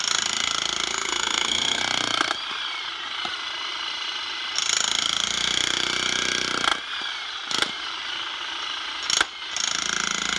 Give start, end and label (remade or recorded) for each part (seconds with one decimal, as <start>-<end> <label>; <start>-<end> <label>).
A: 0.0-0.9 recorded; 0.9-1.8 remade; 1.8-10.4 recorded